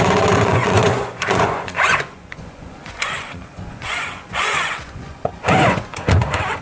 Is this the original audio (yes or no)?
no